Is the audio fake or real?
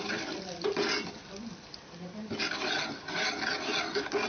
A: real